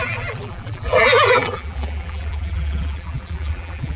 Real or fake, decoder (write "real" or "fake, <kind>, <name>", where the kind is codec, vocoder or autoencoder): fake, vocoder, BigVGAN v2